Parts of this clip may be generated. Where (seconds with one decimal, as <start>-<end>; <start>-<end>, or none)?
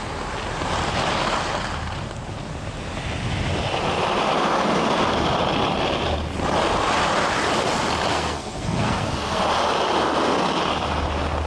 8.1-9.4